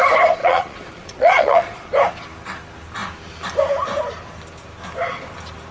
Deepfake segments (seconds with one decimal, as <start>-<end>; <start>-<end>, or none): 0.4-1.9